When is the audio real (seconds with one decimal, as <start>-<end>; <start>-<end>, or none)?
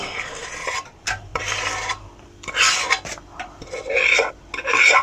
0.0-1.3; 4.3-5.0